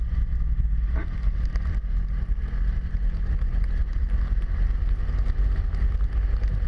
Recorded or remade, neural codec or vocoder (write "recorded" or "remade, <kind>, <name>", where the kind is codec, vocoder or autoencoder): recorded